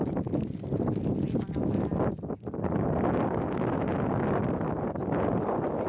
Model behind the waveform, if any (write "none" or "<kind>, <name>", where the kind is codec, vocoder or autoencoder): none